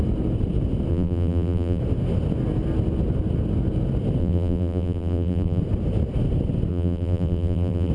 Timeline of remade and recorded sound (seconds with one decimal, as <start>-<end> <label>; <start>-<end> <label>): 0.0-0.9 recorded; 0.9-1.8 remade; 1.8-4.2 recorded; 4.2-5.6 remade; 5.6-6.7 recorded; 6.7-7.9 remade